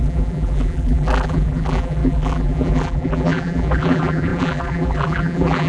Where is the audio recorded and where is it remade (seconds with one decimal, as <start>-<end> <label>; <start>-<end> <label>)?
0.0-5.7 remade